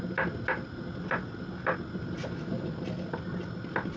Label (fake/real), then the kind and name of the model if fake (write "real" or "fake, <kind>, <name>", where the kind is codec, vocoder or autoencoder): real